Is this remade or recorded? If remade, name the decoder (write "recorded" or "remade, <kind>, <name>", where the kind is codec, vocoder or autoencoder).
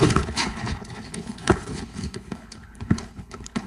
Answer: remade, codec, HILCodec